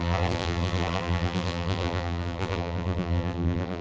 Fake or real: fake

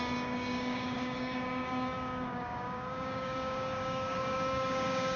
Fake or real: fake